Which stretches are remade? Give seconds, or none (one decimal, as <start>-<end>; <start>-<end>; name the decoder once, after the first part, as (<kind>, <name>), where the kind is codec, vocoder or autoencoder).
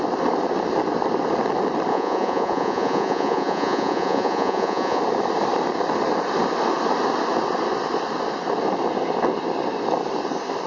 1.9-5.0 (vocoder, Vocos)